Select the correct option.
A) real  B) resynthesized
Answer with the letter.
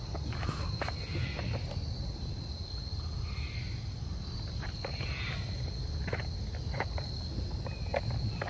A